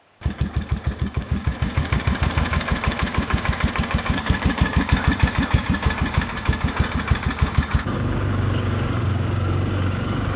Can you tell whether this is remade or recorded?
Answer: remade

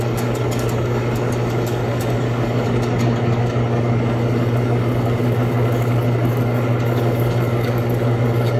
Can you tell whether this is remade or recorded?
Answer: remade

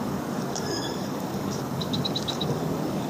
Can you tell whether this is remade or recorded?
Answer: remade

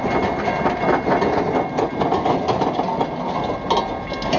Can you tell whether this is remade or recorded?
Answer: recorded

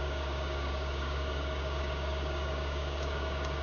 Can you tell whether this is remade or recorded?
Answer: remade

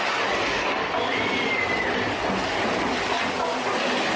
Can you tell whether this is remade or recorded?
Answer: recorded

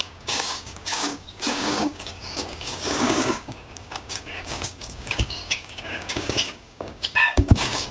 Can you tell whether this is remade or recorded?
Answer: remade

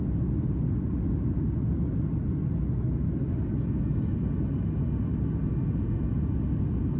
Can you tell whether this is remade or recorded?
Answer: recorded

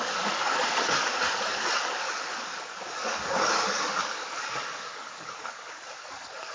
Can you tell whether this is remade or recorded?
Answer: remade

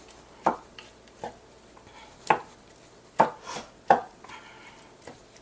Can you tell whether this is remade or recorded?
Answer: recorded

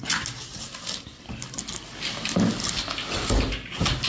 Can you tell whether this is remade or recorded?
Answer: recorded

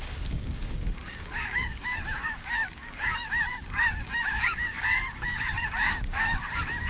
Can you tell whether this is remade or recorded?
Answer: remade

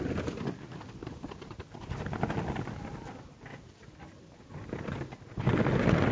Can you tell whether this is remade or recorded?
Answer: recorded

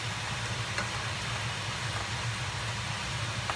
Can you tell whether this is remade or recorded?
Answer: recorded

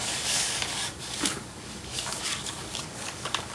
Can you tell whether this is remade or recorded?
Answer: remade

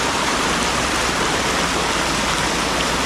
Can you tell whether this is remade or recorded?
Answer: recorded